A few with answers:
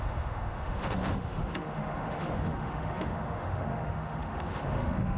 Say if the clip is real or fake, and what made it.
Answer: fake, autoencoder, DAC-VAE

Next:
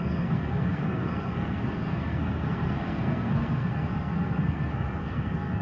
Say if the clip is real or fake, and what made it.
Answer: fake, codec, SNAC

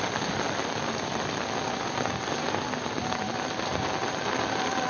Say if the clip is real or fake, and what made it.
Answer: real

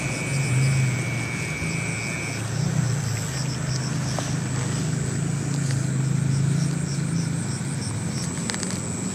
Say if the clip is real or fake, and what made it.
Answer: real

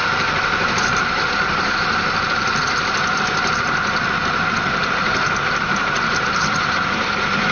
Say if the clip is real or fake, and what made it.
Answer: fake, vocoder, BigVGAN v2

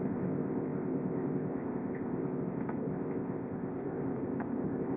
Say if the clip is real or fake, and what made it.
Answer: fake, codec, ZipCodec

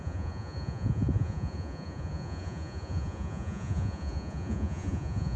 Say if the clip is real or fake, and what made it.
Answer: fake, vocoder, Vocos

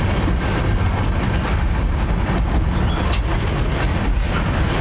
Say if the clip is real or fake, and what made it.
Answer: real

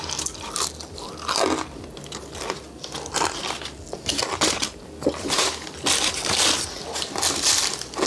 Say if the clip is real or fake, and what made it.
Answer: real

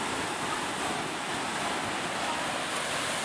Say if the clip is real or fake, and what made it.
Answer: real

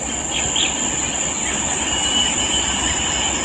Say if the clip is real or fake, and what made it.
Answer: real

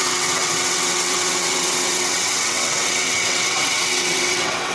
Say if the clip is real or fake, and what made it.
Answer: fake, vocoder, WaveNeXt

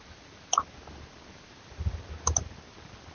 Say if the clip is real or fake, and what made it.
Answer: real